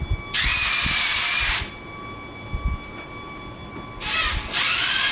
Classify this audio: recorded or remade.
recorded